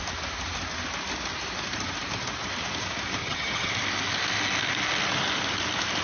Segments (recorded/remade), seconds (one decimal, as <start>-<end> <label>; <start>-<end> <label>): 0.0-3.2 recorded; 3.2-3.7 remade; 3.7-6.0 recorded